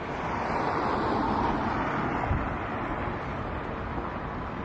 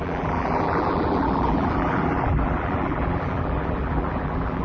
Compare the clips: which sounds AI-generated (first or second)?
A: second